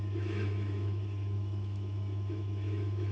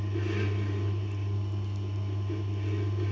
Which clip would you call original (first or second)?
second